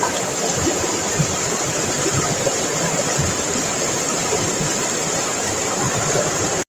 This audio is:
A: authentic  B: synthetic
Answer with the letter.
B